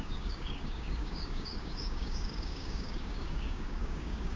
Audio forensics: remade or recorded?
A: remade